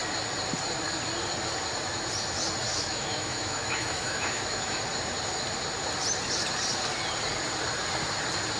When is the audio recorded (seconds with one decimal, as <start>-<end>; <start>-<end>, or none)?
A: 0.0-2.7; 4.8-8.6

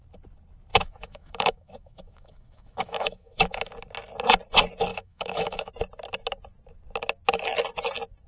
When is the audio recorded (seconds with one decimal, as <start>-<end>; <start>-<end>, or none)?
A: 0.0-0.7; 3.6-4.9; 5.7-8.3

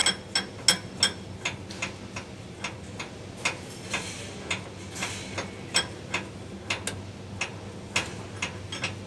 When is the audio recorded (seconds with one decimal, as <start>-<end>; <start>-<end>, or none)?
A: 0.0-9.1

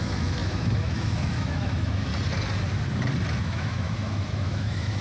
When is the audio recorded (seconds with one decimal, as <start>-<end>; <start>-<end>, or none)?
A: 2.1-3.4

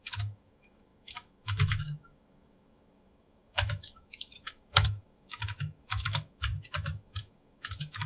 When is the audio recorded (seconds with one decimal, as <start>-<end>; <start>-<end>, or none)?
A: none

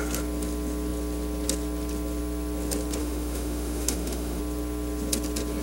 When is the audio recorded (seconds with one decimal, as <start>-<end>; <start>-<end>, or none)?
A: 0.0-3.0; 4.4-5.6

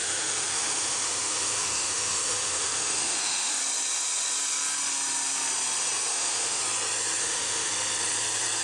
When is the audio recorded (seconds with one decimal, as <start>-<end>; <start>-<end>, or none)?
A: 3.6-6.1; 6.6-7.2; 7.7-8.6

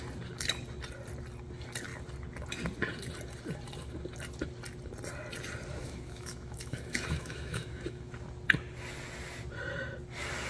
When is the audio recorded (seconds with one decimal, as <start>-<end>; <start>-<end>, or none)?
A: 0.0-5.8; 8.1-10.5